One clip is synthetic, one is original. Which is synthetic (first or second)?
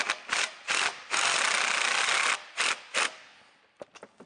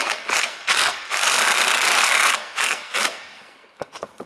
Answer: second